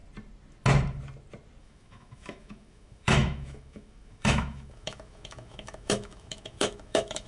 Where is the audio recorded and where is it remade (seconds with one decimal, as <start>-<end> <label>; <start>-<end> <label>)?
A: 0.0-1.6 recorded; 1.6-7.3 remade